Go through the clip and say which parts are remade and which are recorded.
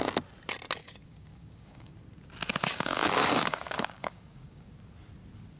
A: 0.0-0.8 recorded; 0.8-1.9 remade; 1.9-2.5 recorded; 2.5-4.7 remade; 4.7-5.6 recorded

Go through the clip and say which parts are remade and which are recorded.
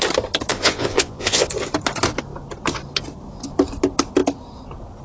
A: 0.0-0.5 recorded; 0.5-1.5 remade; 1.5-5.0 recorded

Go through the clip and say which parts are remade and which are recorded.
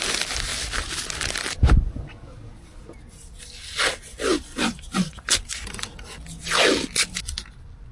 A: 0.0-4.3 recorded; 4.3-6.4 remade; 6.4-7.9 recorded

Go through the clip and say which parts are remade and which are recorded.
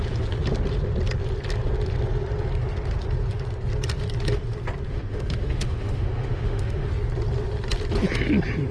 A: 0.0-4.9 recorded; 4.9-6.9 remade; 6.9-8.7 recorded